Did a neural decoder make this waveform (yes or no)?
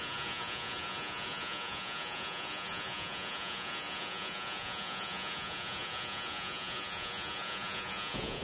yes